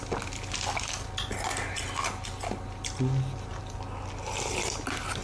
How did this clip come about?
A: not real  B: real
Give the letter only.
B